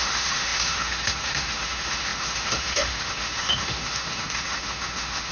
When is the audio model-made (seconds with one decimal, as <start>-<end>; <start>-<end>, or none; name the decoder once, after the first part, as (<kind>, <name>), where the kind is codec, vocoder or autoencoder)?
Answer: 0.0-5.3 (autoencoder, DAC-VAE)